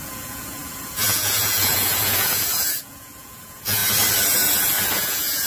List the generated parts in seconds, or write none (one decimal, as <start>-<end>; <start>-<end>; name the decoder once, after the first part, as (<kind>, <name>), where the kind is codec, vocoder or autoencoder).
0.0-3.8 (vocoder, Vocos); 4.9-5.5